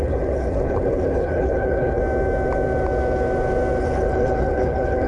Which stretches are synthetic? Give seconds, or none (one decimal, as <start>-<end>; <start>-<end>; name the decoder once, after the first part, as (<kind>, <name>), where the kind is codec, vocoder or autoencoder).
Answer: 0.0-2.0 (codec, HILCodec); 3.8-5.1

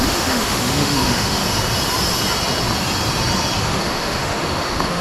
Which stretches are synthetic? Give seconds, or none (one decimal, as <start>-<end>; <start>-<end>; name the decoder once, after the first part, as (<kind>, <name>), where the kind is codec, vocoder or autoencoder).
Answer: 0.0-1.4 (autoencoder, DAC-VAE); 3.6-5.0

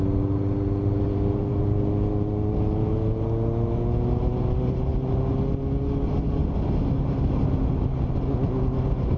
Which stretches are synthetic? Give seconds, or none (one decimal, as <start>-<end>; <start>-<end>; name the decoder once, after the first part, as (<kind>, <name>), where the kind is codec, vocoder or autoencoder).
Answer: none